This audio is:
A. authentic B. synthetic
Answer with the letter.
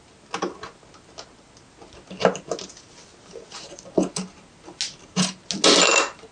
A